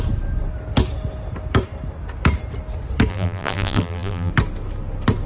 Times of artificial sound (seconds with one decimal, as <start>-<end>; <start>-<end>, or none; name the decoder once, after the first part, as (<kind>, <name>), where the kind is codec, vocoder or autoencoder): 3.1-4.3 (vocoder, BigVGAN v2)